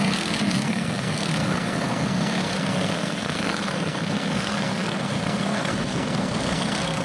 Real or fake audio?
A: fake